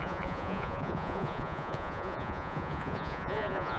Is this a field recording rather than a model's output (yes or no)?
no